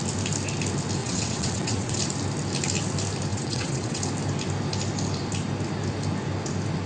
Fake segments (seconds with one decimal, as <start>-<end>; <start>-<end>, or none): 1.0-2.0; 3.3-4.0